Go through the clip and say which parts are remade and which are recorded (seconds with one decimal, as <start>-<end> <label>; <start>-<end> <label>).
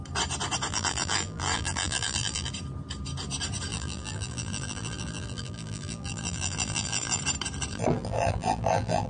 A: 0.0-0.7 recorded; 0.7-2.5 remade; 2.5-3.7 recorded; 3.7-7.2 remade; 7.2-7.7 recorded; 7.7-9.1 remade